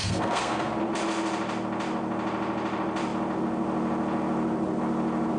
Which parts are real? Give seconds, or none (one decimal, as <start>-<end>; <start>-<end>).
0.7-5.4